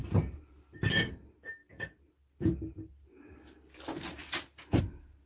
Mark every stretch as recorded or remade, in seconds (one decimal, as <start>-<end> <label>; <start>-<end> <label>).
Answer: 0.0-1.1 remade; 1.1-1.6 recorded; 1.6-4.8 remade; 4.8-5.3 recorded